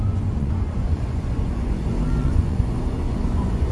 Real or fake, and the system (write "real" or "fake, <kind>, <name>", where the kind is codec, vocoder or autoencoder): fake, vocoder, Vocos